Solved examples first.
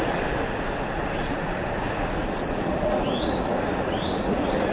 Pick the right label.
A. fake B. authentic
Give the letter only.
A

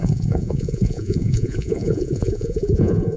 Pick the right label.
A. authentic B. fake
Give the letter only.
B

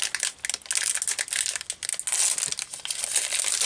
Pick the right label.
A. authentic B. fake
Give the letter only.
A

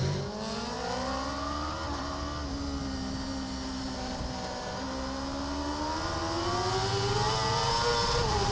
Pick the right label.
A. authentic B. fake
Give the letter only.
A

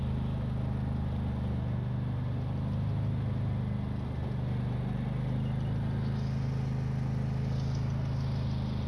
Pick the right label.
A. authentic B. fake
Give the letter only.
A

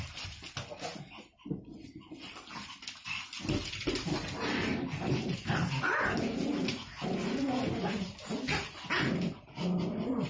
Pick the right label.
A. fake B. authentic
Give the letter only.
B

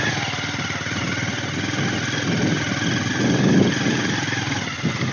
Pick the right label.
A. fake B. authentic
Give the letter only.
B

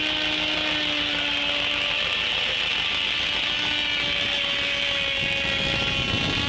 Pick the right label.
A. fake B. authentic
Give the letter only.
B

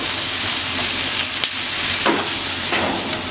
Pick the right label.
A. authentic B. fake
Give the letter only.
A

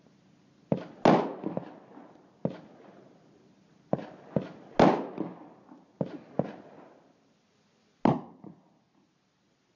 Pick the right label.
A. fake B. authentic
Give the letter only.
B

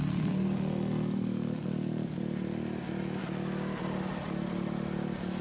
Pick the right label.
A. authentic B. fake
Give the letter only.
A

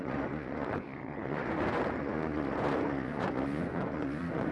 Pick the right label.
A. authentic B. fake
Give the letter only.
B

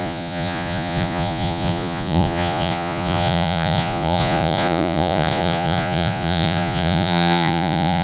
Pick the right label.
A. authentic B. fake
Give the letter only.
B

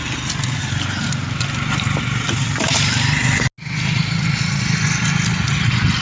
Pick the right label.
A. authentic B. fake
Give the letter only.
A